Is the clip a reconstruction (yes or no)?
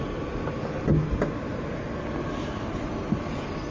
no